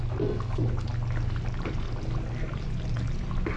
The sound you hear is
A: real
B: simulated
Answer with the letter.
A